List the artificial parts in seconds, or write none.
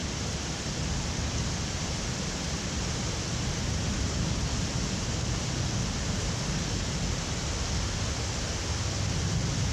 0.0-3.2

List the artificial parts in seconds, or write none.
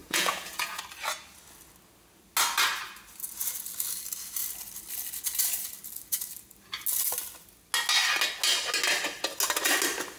0.0-0.8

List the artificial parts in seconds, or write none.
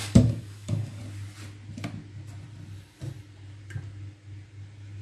0.0-1.0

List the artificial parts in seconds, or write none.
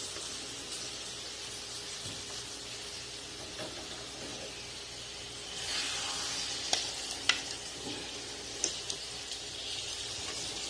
none